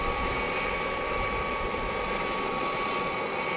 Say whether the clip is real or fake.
real